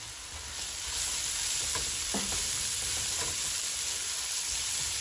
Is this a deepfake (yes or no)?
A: no